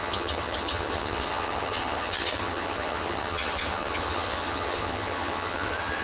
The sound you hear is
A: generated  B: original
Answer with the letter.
A